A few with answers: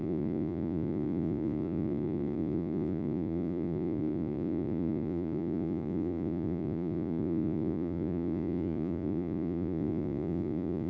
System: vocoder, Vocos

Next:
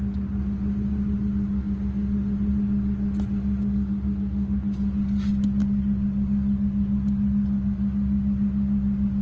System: none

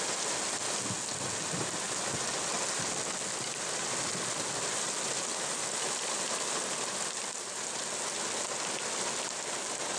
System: none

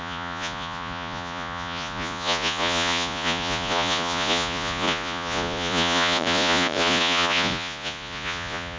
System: vocoder, Vocos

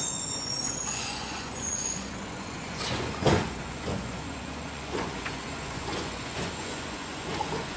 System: vocoder, Vocos